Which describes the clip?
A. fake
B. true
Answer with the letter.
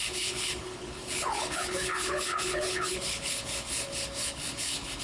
A